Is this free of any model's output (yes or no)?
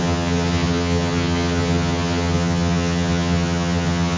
no